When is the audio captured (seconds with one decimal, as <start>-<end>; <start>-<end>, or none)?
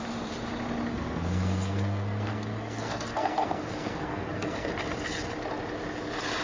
0.0-0.9; 4.7-6.4